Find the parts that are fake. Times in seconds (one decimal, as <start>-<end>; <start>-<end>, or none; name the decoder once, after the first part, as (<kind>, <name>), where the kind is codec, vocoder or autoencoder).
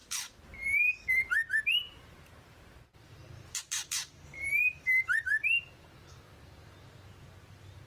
0.0-5.4 (vocoder, BigVGAN v2); 6.1-7.9